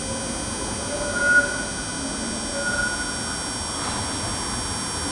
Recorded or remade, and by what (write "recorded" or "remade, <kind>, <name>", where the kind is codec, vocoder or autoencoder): recorded